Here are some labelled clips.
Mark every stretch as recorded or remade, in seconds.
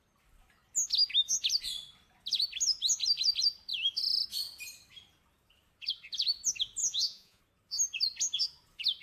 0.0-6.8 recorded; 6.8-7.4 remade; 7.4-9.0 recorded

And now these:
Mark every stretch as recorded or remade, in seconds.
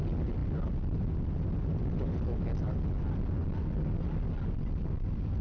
0.0-5.4 recorded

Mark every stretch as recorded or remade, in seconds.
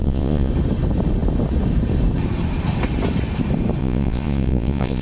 0.0-0.5 remade; 0.5-3.8 recorded; 3.8-5.0 remade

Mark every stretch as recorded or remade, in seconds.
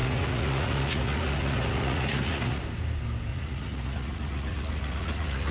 0.0-2.6 remade; 2.6-3.3 recorded; 3.3-5.5 remade